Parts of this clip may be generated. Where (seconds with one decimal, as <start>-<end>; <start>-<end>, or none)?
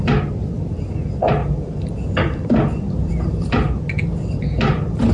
1.4-3.1